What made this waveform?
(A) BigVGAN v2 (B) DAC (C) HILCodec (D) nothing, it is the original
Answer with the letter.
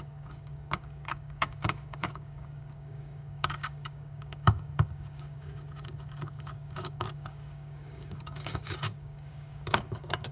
B